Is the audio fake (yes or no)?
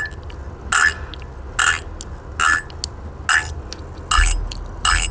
no